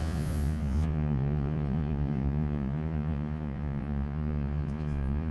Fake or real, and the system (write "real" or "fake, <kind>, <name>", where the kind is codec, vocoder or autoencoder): fake, vocoder, Vocos